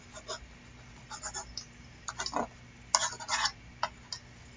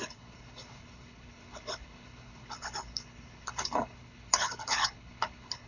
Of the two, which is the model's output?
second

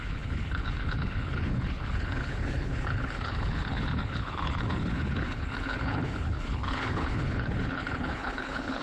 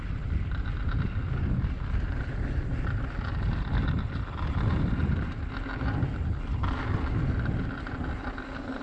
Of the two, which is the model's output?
first